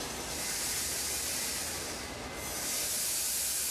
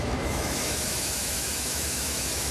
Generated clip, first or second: second